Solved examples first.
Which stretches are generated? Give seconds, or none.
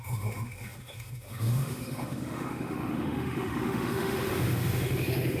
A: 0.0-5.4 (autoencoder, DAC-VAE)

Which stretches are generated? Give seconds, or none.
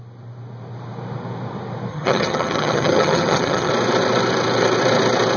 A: 1.9-3.7 (vocoder, HiFi-GAN)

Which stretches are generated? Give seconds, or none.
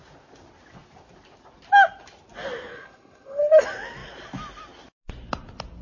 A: 2.7-3.6 (codec, HILCodec)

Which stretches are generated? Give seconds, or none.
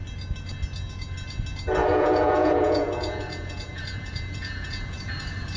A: 1.8-5.1 (vocoder, Vocos)